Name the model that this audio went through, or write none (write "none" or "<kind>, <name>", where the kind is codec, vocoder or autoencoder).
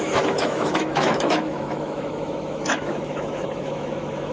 autoencoder, DAC-VAE